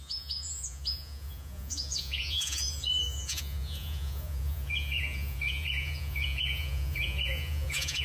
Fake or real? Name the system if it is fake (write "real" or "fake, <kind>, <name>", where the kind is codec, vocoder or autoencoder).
fake, vocoder, Vocos